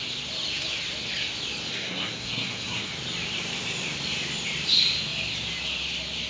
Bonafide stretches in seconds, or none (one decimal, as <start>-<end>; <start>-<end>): 0.0-1.7; 2.9-6.3